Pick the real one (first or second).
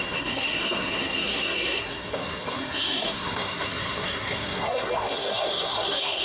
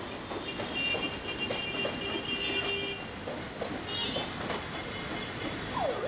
second